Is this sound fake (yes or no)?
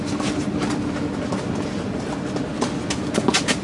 no